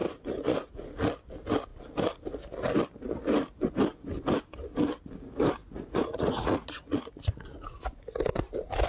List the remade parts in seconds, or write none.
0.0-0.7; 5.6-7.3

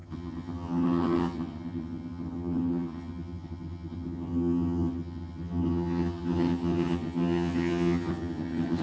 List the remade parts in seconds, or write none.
0.0-8.8

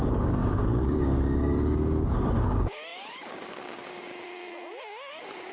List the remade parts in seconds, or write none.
0.0-4.1; 5.1-5.5

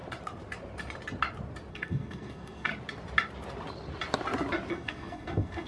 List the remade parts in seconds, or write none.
1.7-2.7; 4.7-5.7

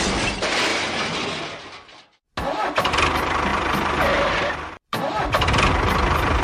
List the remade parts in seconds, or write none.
0.0-0.7; 2.9-6.4

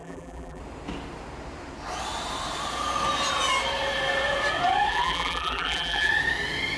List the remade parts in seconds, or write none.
0.0-0.6; 4.9-6.1

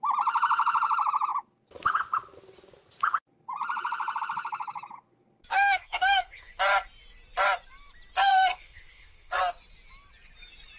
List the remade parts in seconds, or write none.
5.5-6.5; 8.3-9.4